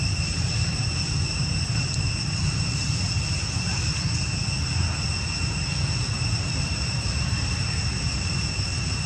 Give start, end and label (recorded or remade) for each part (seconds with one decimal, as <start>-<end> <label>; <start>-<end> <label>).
0.0-2.8 remade; 2.8-6.5 recorded; 6.5-9.1 remade